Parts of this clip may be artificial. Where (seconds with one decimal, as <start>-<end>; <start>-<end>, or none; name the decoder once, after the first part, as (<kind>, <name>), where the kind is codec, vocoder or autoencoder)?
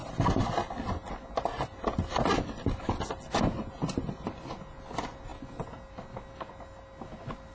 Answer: none